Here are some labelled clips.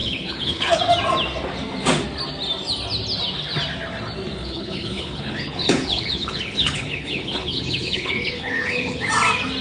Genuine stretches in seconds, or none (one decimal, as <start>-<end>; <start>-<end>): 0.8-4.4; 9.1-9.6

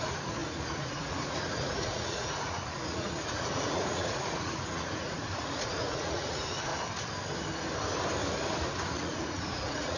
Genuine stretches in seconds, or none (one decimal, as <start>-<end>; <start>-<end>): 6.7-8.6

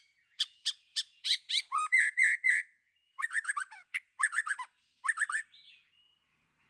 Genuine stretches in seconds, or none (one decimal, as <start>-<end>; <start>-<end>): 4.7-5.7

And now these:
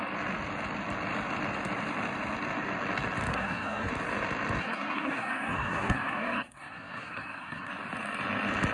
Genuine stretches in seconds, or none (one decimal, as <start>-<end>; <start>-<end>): 0.0-3.3; 3.9-4.6; 7.7-8.7

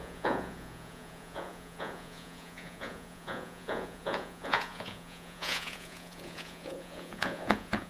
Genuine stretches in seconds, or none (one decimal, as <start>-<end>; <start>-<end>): none